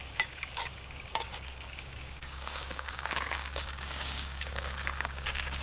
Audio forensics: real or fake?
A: fake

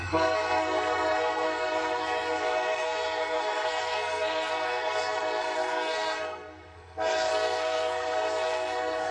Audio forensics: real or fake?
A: fake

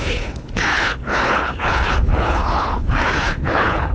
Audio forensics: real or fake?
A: fake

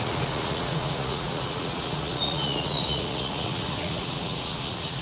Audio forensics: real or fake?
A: fake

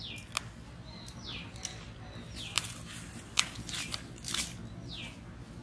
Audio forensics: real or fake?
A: real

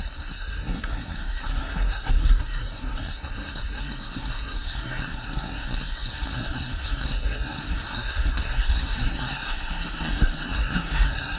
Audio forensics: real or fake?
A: fake